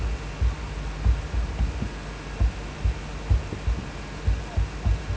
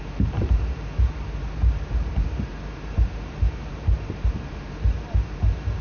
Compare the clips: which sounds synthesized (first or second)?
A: second